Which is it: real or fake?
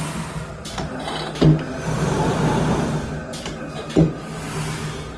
real